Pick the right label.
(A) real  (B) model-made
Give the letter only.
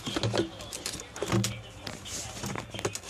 A